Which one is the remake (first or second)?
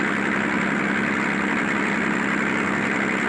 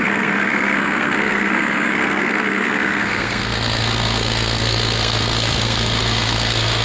second